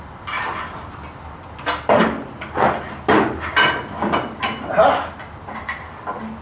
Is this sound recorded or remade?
remade